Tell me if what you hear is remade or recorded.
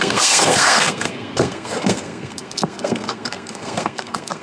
remade